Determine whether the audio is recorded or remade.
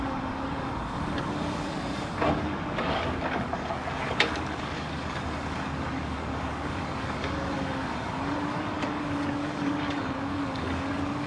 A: remade